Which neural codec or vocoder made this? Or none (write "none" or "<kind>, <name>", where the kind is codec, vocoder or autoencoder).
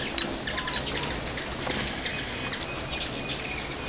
none